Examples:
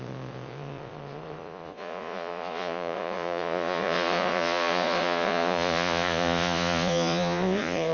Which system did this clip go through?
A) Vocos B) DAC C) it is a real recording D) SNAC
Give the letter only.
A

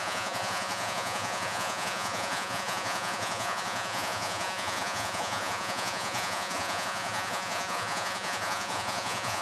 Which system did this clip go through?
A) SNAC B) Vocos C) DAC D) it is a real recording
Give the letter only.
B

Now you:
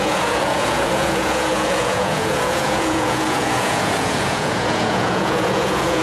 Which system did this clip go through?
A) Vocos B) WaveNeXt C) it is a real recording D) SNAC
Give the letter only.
A